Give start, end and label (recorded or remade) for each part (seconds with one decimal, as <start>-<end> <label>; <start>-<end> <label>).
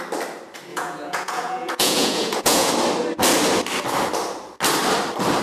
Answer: 0.0-0.7 recorded; 0.7-2.7 remade; 2.7-5.4 recorded